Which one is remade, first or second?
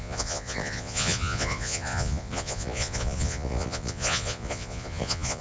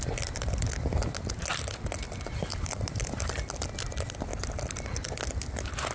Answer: first